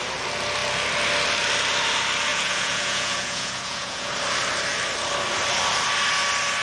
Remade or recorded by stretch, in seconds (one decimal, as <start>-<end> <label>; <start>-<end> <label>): 0.0-2.3 recorded; 2.3-4.1 remade; 4.1-6.6 recorded